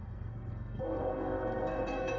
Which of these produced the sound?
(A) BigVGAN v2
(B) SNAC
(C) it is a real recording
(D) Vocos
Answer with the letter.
B